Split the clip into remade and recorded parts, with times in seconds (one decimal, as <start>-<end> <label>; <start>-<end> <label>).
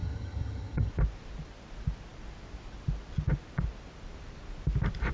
0.0-0.9 remade; 0.9-5.1 recorded